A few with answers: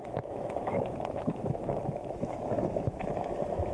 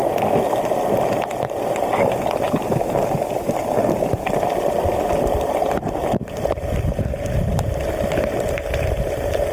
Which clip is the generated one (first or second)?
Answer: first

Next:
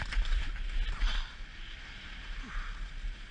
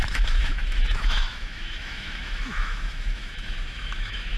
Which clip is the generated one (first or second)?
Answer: second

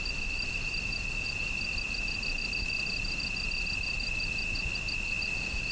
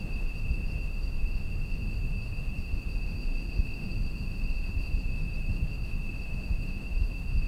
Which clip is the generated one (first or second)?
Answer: second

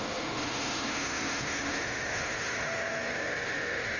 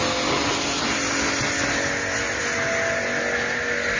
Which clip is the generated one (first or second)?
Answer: first